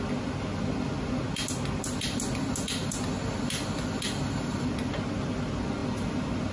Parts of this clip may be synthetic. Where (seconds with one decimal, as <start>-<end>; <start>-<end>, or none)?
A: none